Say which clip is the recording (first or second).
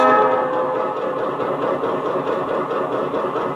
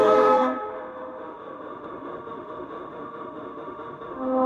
first